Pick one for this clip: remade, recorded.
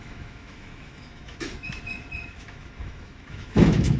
remade